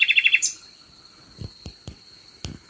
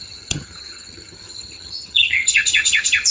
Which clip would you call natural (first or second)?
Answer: first